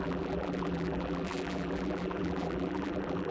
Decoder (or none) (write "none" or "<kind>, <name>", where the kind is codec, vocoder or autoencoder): vocoder, BigVGAN v2